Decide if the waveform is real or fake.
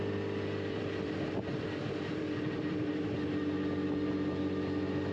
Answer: fake